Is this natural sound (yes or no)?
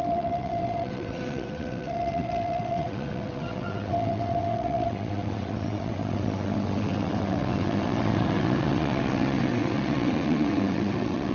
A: no